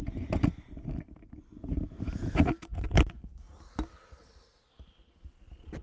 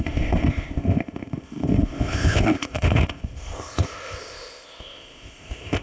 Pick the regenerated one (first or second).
second